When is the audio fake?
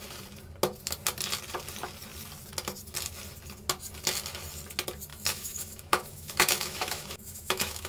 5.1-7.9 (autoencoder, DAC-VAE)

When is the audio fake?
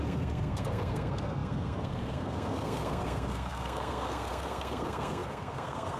0.0-6.0 (codec, SNAC)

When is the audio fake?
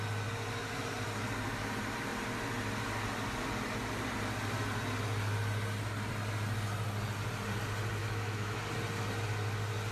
8.0-8.6 (autoencoder, DAC-VAE)